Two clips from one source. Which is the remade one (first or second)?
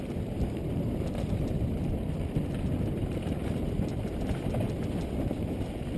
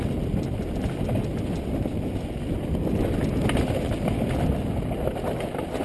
first